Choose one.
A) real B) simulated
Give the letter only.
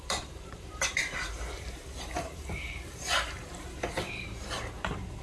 B